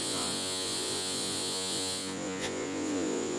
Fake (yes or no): yes